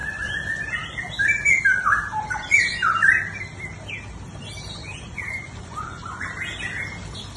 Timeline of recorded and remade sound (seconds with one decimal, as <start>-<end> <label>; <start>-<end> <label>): 0.0-0.6 remade; 0.6-4.8 recorded; 4.8-6.2 remade; 6.2-7.4 recorded